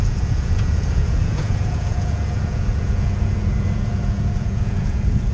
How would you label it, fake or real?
fake